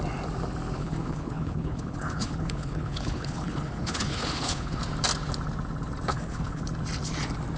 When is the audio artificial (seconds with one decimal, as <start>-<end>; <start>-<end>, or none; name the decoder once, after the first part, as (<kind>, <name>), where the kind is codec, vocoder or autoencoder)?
0.8-4.8 (codec, HILCodec); 6.1-6.6